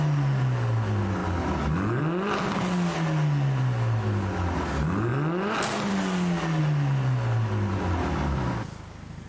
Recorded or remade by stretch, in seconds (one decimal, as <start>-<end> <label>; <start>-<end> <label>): 0.0-9.3 recorded